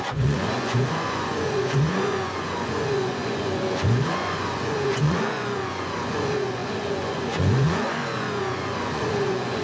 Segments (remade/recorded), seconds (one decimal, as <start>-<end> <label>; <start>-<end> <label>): 0.0-9.6 remade